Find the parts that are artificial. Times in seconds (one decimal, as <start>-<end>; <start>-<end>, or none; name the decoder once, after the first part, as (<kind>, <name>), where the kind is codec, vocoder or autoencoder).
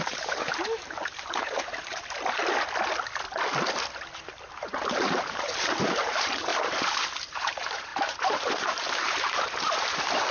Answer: 0.0-2.4 (vocoder, BigVGAN v2); 4.2-6.5; 7.2-10.3